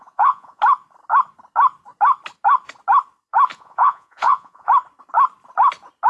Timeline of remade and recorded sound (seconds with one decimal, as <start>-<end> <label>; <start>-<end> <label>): 0.0-0.6 remade; 0.6-3.5 recorded; 3.5-4.7 remade; 4.7-6.1 recorded